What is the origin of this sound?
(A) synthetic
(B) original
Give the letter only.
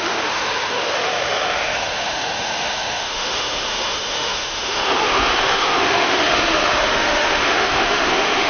A